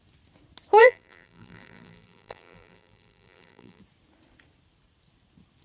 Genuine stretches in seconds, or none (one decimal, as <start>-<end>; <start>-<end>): 0.0-0.8; 3.8-5.6